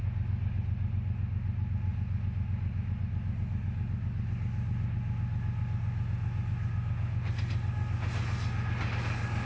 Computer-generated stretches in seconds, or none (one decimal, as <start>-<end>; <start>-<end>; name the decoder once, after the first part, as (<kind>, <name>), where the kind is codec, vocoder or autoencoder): none